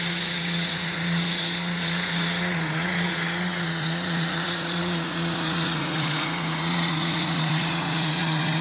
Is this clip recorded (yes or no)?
no